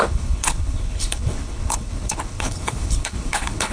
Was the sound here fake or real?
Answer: fake